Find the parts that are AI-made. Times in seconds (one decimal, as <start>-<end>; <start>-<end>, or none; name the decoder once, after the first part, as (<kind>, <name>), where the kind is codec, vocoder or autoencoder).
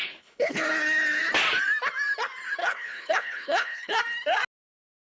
0.0-0.6 (codec, HILCodec); 2.6-4.0